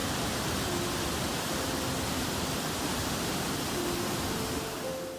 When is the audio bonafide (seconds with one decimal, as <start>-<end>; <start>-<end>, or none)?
0.0-5.2